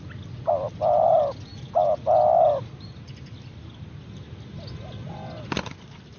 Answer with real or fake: real